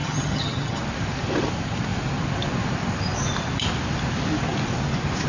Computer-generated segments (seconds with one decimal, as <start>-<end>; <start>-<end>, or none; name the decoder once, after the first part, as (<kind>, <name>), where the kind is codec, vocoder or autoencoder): 0.0-0.8 (vocoder, HiFi-GAN)